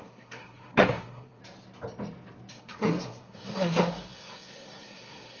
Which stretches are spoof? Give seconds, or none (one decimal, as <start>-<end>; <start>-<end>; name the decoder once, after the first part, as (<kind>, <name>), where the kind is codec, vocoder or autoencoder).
0.0-1.4 (codec, SNAC); 2.5-5.4